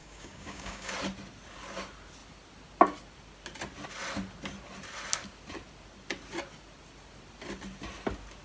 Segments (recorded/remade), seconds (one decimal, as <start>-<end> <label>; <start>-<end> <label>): 0.0-0.9 remade; 0.9-8.4 recorded